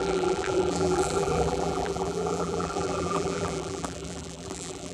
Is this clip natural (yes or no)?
no